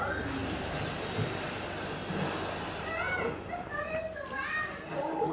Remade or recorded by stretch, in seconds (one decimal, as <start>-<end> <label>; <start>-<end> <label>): 0.0-5.3 recorded